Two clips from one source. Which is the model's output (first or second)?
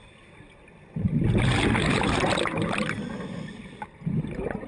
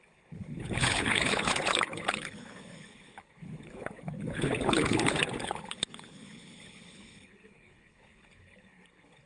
second